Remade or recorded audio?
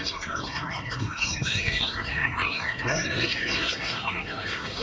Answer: remade